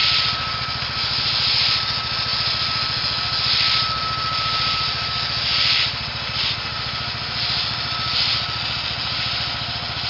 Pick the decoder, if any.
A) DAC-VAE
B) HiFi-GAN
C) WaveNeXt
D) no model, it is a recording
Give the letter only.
D